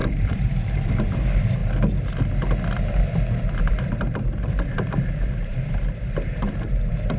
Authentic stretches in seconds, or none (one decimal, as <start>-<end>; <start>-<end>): 1.6-3.6